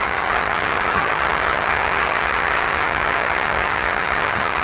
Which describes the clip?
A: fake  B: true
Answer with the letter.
A